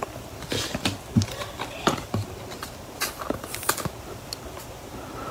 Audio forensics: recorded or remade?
recorded